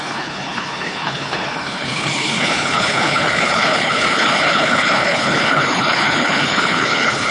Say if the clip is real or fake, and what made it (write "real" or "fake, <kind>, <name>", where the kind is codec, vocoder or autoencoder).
fake, codec, HILCodec